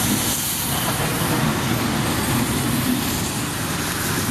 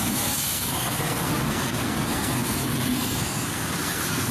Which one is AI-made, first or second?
second